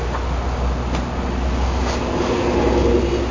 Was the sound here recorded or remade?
recorded